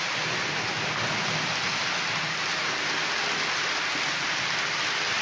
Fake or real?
real